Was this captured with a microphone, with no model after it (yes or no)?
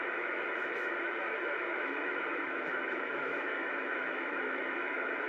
no